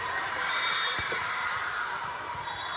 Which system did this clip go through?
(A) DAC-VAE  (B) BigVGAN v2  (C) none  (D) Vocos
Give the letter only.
B